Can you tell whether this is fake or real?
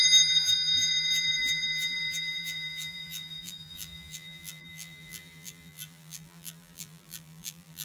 fake